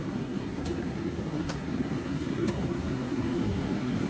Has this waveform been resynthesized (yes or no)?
yes